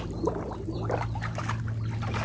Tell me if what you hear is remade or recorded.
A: recorded